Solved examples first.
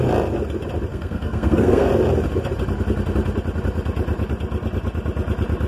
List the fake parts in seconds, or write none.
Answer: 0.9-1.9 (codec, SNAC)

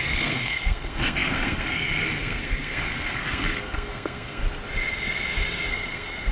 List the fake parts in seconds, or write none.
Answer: 0.0-4.4 (codec, SNAC); 5.7-6.3

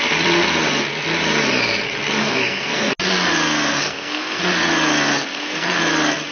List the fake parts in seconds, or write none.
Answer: 2.2-2.9 (codec, SNAC); 3.7-4.4; 5.1-5.8

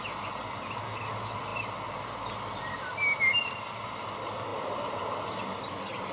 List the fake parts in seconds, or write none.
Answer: none

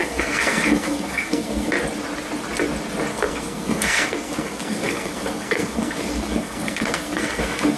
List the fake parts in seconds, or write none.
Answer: 0.0-1.7 (codec, SNAC); 3.1-7.8

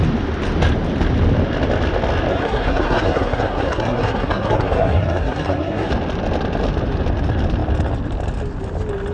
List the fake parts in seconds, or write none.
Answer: 2.3-5.9 (codec, SNAC)